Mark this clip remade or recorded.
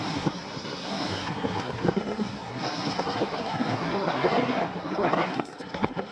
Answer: remade